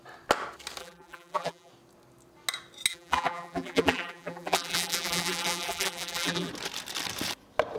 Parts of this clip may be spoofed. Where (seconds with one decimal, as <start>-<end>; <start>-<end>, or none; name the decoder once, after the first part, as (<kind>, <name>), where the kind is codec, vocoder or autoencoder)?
0.8-1.7 (vocoder, BigVGAN v2); 2.9-6.5